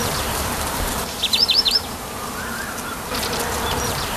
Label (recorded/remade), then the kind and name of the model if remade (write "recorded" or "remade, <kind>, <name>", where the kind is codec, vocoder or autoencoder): remade, vocoder, BigVGAN v2